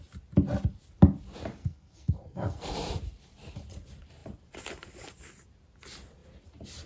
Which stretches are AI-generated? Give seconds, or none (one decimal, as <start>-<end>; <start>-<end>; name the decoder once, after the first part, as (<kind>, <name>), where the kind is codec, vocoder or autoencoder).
1.6-2.7 (codec, SNAC)